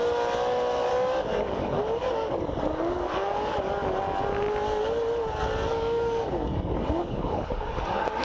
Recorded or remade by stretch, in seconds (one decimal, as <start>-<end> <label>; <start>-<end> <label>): 0.0-0.9 recorded; 0.9-3.7 remade; 3.7-5.7 recorded; 5.7-8.2 remade